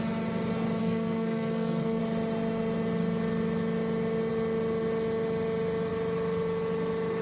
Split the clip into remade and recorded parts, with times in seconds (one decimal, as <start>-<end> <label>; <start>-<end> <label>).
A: 0.0-0.8 recorded; 0.8-2.0 remade; 2.0-7.2 recorded